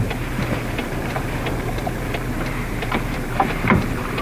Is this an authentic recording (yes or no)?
no